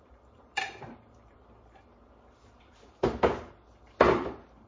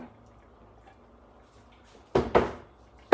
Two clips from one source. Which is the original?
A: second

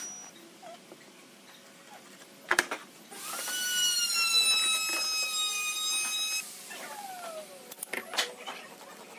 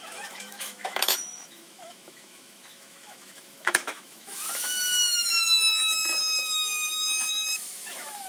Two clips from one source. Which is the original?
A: first